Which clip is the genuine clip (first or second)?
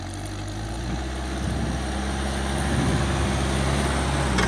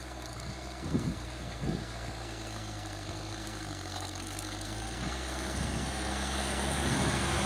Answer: first